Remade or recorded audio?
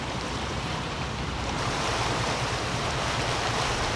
remade